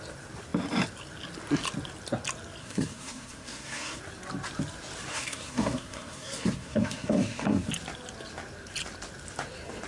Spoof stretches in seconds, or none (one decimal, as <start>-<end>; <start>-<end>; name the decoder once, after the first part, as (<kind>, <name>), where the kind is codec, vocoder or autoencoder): 2.6-4.0 (codec, SNAC); 5.1-7.7